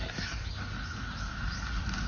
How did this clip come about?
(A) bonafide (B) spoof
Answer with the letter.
A